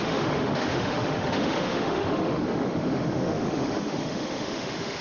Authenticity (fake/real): fake